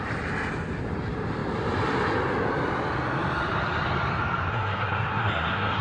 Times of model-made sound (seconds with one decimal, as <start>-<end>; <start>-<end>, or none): 4.5-5.8